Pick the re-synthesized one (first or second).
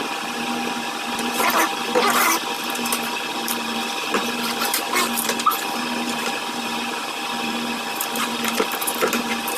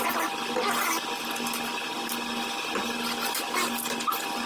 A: first